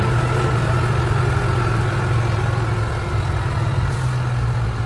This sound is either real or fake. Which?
real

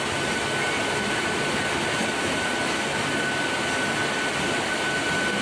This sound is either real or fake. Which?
real